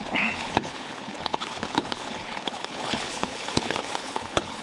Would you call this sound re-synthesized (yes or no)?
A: yes